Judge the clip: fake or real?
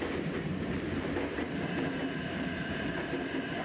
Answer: fake